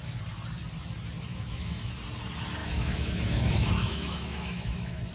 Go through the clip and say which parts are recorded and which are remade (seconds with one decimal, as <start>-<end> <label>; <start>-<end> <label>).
0.0-1.3 recorded; 1.3-1.9 remade; 1.9-2.6 recorded; 2.6-5.1 remade